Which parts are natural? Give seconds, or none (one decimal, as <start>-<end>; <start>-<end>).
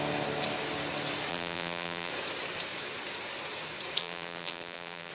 0.0-1.3; 2.1-4.0